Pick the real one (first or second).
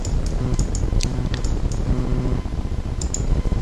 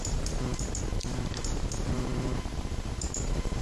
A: first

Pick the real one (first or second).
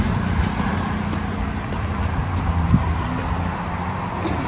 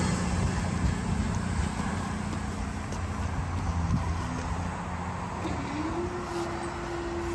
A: second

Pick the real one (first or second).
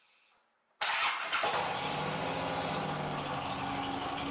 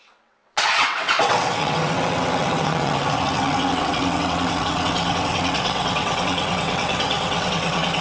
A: first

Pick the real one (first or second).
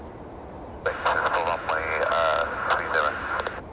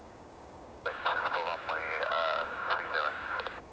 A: first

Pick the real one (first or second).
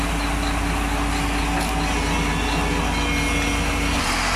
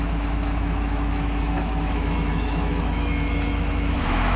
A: first